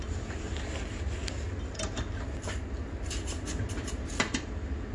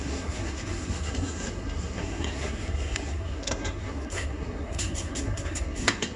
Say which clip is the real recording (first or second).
first